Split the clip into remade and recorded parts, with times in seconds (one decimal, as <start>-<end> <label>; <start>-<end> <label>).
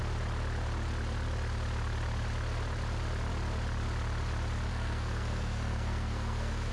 0.0-4.7 recorded; 4.7-6.7 remade